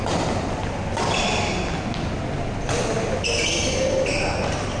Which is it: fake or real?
real